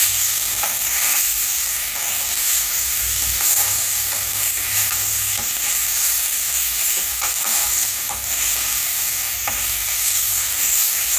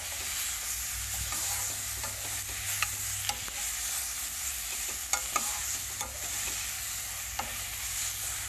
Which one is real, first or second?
second